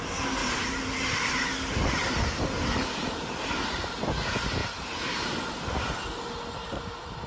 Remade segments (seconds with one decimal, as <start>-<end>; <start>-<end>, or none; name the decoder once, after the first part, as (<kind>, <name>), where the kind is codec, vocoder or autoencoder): 0.4-1.3 (vocoder, BigVGAN v2)